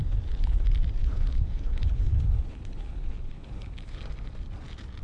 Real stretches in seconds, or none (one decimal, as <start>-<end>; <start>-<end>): 0.6-1.0; 4.0-5.0